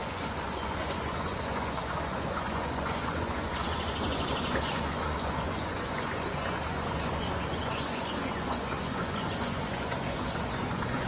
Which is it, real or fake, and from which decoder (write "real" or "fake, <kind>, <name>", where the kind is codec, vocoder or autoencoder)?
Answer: fake, vocoder, Vocos